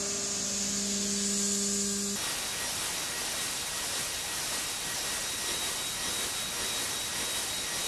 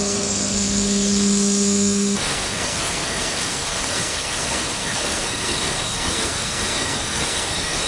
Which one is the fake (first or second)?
second